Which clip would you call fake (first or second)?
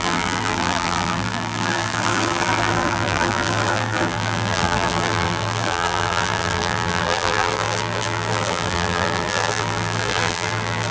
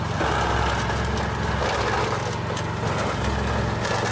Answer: first